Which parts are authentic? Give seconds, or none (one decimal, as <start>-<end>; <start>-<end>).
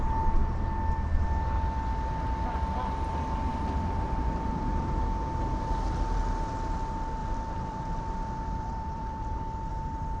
0.0-3.5; 5.0-7.2; 9.7-10.2